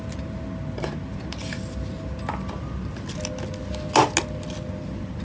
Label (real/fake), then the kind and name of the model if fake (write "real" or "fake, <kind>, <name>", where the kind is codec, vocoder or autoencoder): real